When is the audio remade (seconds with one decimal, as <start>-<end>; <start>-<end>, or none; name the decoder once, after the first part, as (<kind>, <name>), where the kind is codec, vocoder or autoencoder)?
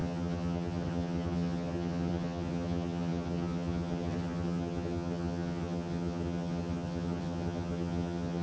0.0-8.4 (vocoder, HiFi-GAN)